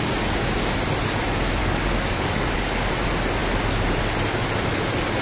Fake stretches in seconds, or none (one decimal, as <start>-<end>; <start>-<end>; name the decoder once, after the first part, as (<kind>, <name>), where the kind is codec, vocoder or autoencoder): 1.6-2.9 (codec, DAC)